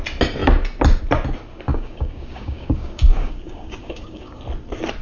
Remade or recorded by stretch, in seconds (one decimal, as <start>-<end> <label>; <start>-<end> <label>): 0.0-1.7 recorded; 1.7-4.4 remade; 4.4-5.0 recorded